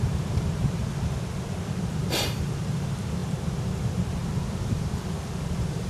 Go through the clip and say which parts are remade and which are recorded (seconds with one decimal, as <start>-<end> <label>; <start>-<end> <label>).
0.0-0.8 remade; 0.8-1.8 recorded; 1.8-5.9 remade